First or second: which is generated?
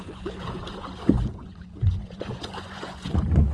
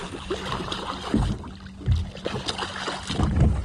first